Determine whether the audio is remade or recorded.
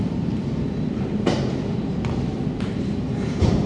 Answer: remade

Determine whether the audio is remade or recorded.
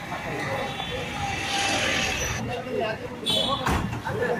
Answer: recorded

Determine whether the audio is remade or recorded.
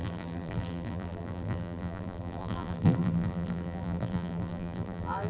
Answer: remade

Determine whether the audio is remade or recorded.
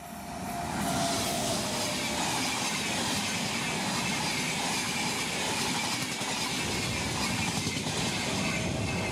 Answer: recorded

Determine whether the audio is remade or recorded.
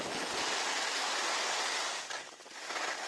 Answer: recorded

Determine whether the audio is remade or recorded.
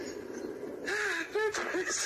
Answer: recorded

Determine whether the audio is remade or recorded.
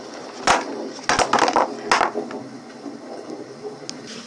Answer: recorded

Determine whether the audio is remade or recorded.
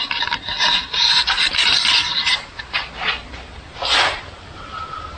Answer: recorded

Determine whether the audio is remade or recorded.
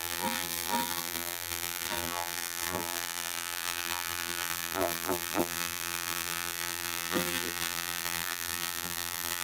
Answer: remade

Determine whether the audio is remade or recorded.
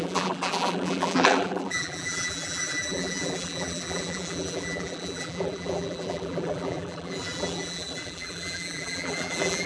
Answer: remade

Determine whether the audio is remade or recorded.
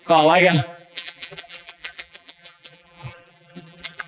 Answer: remade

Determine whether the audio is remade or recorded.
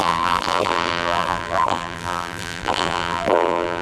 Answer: remade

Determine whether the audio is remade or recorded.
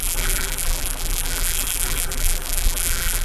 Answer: remade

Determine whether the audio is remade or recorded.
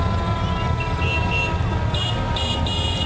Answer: recorded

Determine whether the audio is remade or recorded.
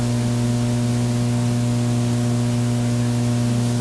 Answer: recorded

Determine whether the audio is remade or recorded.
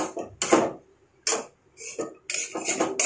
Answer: recorded